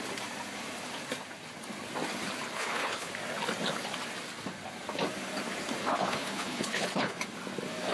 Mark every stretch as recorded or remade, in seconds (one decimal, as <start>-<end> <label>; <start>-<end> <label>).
0.0-2.5 recorded; 2.5-3.1 remade; 3.1-5.8 recorded; 5.8-7.2 remade; 7.2-7.9 recorded